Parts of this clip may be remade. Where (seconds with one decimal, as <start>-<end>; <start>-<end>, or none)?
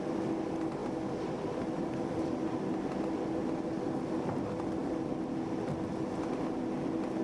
0.8-2.7